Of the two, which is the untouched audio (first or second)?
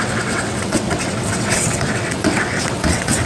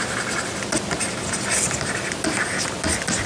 second